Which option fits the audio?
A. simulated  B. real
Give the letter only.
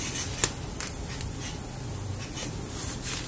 B